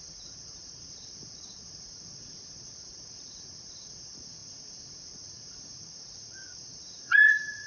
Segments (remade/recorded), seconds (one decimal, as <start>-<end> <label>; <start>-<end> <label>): 0.0-7.7 remade